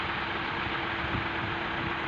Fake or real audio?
fake